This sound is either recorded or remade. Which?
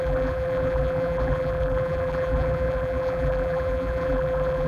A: remade